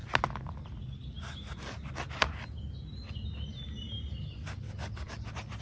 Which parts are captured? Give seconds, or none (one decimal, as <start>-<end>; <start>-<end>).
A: 0.0-5.6